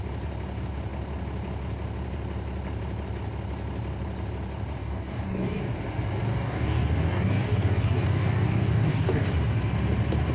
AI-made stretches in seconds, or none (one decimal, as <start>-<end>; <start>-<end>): 4.8-5.6; 6.3-9.3